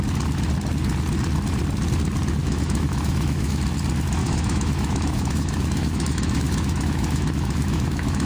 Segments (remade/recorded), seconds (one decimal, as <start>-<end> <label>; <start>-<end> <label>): 0.0-2.4 recorded; 2.4-3.6 remade; 3.6-4.2 recorded; 4.2-8.3 remade